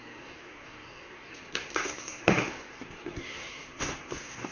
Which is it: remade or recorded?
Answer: remade